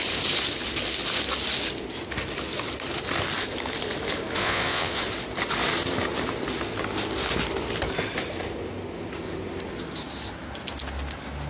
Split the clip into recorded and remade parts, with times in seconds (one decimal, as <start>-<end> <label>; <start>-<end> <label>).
0.0-4.4 recorded; 4.4-5.0 remade; 5.0-11.5 recorded